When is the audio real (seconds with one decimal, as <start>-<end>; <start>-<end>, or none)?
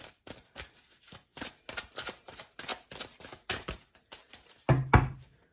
0.0-5.5